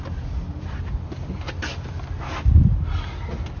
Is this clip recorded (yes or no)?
yes